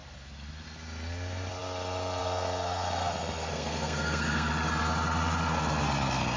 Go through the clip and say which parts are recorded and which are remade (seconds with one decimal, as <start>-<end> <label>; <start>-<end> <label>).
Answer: 0.0-3.5 recorded; 3.5-4.5 remade; 4.5-6.4 recorded